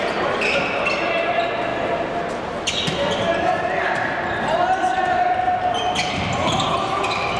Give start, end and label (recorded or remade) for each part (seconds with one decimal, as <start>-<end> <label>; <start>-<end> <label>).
0.0-7.4 recorded